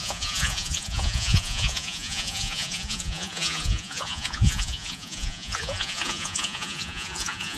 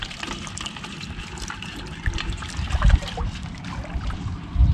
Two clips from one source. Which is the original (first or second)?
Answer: second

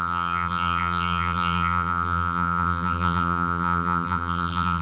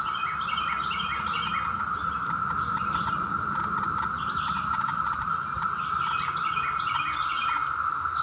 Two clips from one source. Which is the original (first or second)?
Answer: second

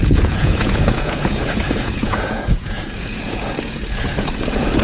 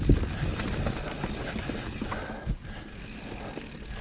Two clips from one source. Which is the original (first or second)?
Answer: second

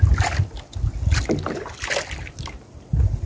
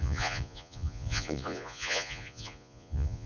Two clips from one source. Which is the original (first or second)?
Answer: first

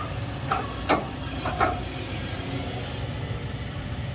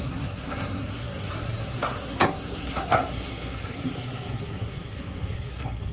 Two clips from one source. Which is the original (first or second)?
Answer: first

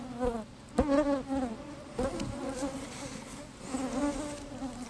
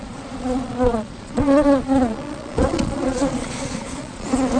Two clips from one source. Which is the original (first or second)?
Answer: first